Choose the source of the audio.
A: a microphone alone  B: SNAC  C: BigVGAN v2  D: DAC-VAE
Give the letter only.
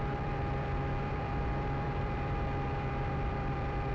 C